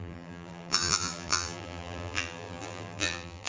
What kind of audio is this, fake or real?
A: fake